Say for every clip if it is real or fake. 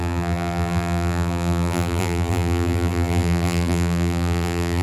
fake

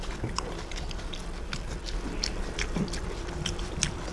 fake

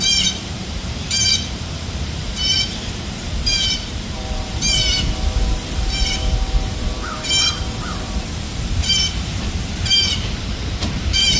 fake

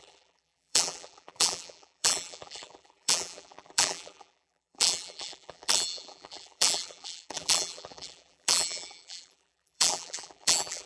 fake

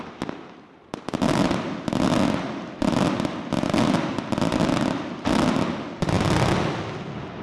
real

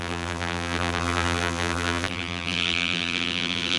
fake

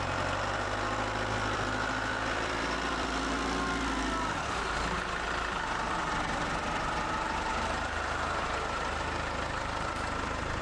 fake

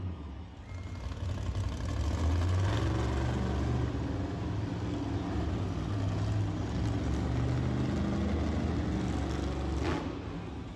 real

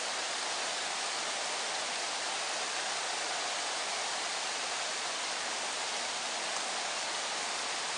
fake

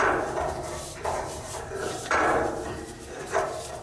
fake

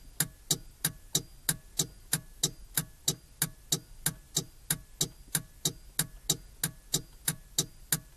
real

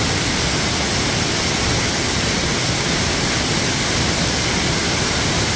real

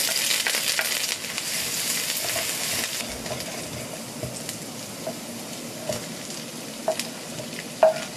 real